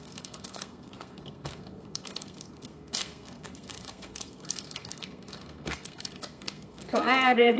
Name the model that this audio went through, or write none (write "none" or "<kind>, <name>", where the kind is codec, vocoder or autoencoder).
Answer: codec, SNAC